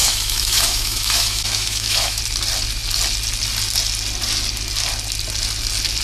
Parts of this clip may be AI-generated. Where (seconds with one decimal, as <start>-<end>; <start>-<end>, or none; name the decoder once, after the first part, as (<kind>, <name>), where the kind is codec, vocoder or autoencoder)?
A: 0.0-2.2 (autoencoder, DAC-VAE)